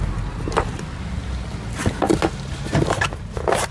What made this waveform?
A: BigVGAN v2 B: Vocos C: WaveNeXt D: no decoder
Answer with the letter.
D